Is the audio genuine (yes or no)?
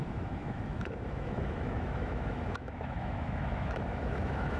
no